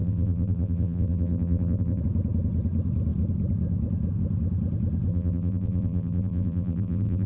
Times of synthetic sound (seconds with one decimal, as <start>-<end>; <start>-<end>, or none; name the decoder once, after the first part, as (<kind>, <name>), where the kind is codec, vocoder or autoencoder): 0.0-2.0 (vocoder, BigVGAN v2); 5.1-7.3